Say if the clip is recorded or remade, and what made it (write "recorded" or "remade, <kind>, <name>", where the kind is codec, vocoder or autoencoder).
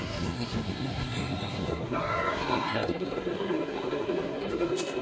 remade, codec, SNAC